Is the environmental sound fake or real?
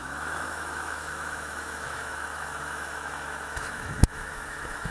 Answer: fake